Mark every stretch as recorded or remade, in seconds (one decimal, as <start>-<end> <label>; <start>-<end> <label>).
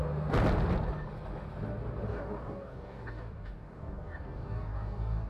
0.0-2.1 recorded; 2.1-5.3 remade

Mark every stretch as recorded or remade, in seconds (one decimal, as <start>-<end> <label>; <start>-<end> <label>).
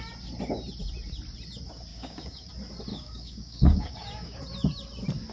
0.0-1.9 recorded; 1.9-2.5 remade; 2.5-2.9 recorded; 2.9-4.4 remade; 4.4-5.3 recorded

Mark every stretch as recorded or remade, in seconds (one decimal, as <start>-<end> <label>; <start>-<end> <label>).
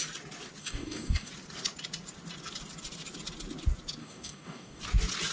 0.0-0.6 recorded; 0.6-1.3 remade; 1.3-4.0 recorded; 4.0-4.8 remade; 4.8-5.3 recorded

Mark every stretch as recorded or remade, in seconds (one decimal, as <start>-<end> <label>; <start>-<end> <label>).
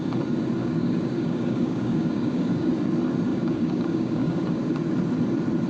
0.0-0.6 recorded; 0.6-2.7 remade; 2.7-3.3 recorded; 3.3-4.6 remade; 4.6-5.7 recorded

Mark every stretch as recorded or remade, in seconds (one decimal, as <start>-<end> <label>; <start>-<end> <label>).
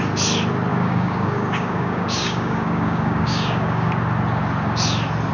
0.0-0.7 recorded; 0.7-3.9 remade; 3.9-5.3 recorded